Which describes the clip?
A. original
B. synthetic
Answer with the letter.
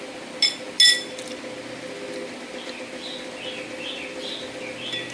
A